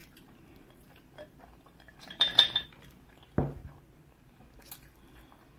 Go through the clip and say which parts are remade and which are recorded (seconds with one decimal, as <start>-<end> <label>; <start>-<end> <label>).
0.0-3.2 remade; 3.2-3.6 recorded; 3.6-4.4 remade; 4.4-5.6 recorded